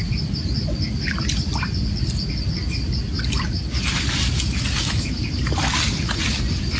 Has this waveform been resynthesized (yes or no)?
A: no